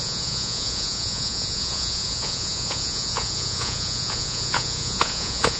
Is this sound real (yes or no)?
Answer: no